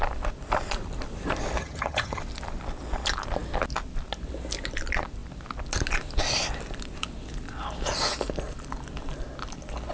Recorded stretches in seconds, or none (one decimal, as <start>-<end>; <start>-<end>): 0.0-1.6; 2.2-9.9